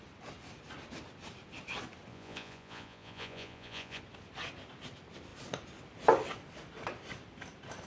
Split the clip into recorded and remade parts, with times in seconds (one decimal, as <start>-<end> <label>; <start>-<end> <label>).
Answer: 0.0-2.1 recorded; 2.1-4.0 remade; 4.0-7.9 recorded